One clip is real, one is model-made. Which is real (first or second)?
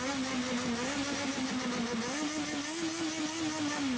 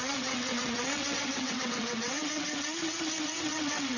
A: first